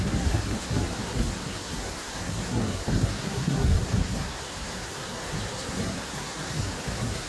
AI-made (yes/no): yes